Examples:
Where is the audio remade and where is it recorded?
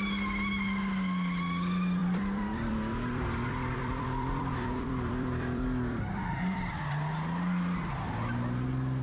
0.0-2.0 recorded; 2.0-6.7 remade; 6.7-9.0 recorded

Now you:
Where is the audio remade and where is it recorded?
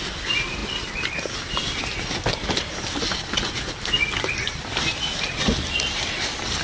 0.0-6.6 recorded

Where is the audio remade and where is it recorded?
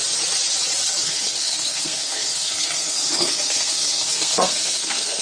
0.0-1.0 recorded; 1.0-5.2 remade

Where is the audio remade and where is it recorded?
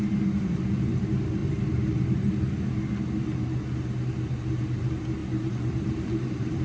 0.0-5.2 recorded; 5.2-6.6 remade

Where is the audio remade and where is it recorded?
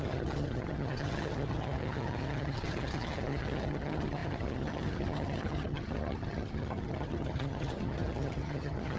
0.0-9.0 remade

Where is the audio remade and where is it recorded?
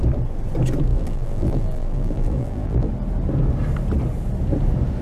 0.0-0.9 recorded; 0.9-2.9 remade; 2.9-5.0 recorded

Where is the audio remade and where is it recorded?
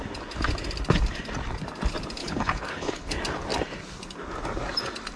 0.0-2.2 recorded; 2.2-3.1 remade; 3.1-5.2 recorded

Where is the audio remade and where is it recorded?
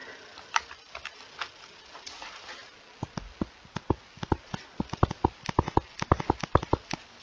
0.0-7.2 recorded